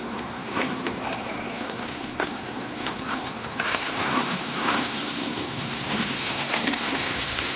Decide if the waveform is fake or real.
fake